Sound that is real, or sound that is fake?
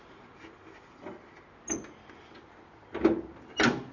real